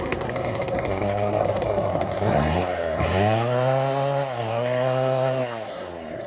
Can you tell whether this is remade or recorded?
remade